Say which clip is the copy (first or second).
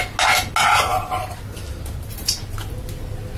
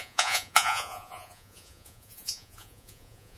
second